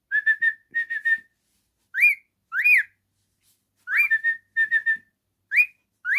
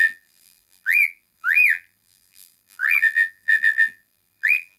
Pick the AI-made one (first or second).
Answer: second